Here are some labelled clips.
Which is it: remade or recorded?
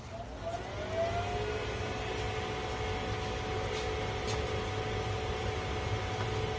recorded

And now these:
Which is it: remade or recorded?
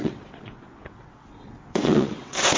remade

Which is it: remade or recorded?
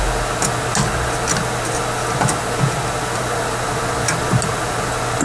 recorded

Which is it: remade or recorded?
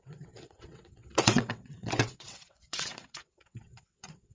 remade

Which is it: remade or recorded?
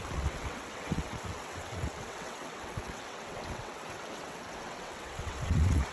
remade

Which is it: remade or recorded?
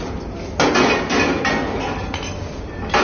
recorded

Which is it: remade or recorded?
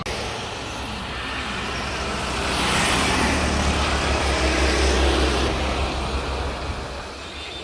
recorded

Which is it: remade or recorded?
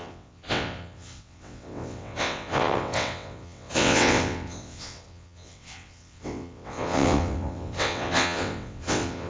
remade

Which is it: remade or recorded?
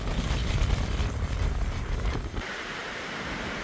recorded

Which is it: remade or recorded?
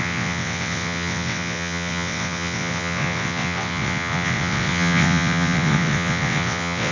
remade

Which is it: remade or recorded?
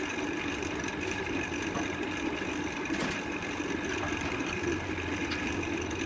recorded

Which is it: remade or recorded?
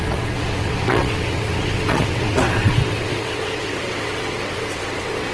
remade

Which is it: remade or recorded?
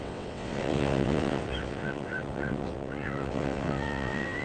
remade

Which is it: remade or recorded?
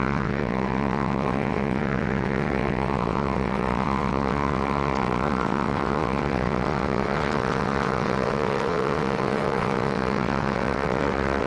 remade